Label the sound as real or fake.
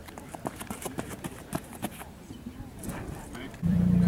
fake